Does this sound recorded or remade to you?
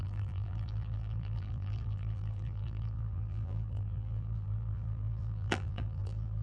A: remade